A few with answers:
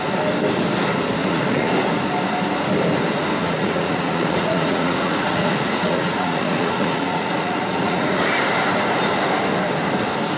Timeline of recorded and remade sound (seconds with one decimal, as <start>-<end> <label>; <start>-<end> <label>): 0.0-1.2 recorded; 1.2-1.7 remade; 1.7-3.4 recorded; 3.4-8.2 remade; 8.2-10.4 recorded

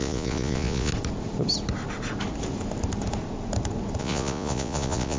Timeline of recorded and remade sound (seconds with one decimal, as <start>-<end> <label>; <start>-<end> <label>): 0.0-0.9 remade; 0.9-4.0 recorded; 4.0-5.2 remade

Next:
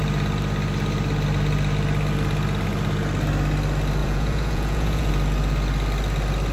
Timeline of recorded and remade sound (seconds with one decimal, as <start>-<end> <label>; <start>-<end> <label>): 0.0-4.0 recorded; 4.0-5.1 remade; 5.1-6.5 recorded

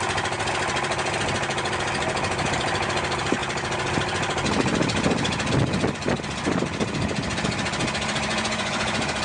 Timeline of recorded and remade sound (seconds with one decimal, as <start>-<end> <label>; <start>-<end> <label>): 0.0-8.3 recorded; 8.3-9.2 remade

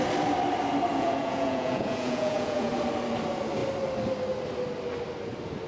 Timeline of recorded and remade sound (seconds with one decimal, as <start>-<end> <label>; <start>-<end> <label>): 0.0-0.9 recorded; 0.9-2.7 remade; 2.7-5.7 recorded

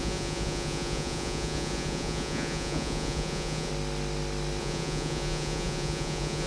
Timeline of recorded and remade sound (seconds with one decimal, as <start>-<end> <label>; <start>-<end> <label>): 0.0-3.7 remade; 3.7-4.6 recorded; 4.6-6.5 remade

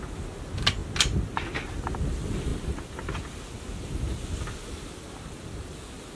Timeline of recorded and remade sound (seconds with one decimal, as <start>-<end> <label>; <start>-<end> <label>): 0.0-6.2 recorded

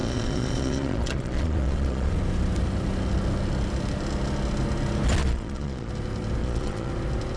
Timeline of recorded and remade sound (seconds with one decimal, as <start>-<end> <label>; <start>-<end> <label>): 0.0-2.1 remade; 2.1-5.2 recorded; 5.2-5.9 remade; 5.9-6.4 recorded; 6.4-6.9 remade; 6.9-7.4 recorded